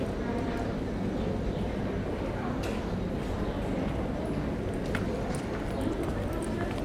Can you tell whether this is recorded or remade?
recorded